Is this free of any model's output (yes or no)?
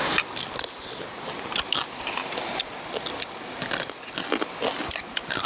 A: yes